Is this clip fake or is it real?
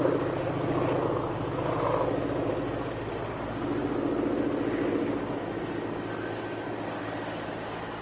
real